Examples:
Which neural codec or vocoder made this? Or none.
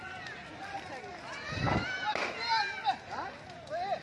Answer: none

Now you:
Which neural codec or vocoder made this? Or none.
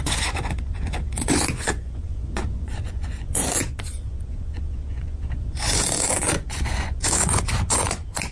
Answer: vocoder, Vocos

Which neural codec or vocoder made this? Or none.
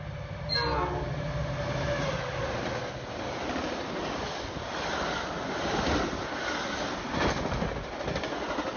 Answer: none